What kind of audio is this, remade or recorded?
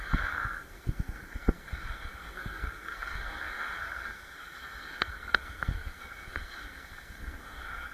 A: remade